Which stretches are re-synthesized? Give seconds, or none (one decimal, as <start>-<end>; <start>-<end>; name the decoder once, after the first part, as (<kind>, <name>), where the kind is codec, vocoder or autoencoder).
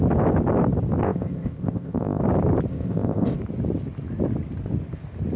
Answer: 1.0-2.2 (codec, ZipCodec); 2.7-3.4